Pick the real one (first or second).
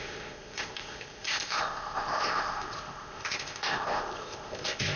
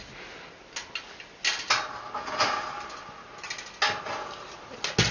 second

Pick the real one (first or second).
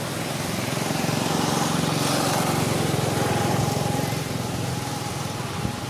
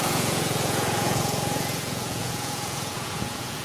first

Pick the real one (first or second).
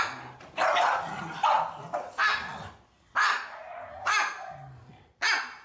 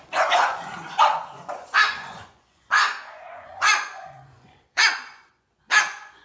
first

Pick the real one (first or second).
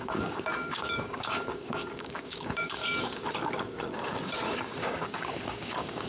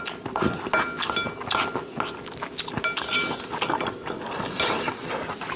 second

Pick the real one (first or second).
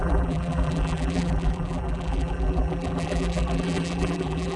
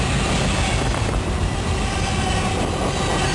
second